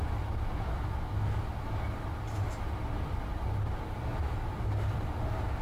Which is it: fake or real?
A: real